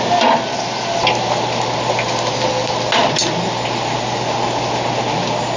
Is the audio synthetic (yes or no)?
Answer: no